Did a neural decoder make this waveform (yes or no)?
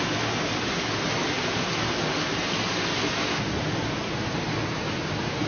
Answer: no